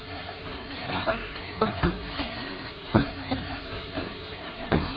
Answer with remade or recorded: remade